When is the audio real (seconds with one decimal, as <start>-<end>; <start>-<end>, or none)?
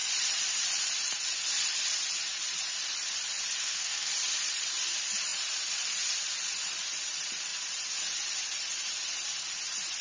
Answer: 0.0-3.6; 4.1-10.0